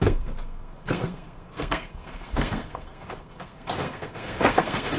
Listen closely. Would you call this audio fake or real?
fake